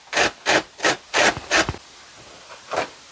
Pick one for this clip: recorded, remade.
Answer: recorded